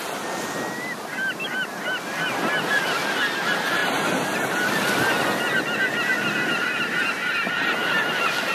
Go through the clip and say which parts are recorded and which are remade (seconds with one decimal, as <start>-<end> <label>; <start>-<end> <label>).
0.0-8.5 recorded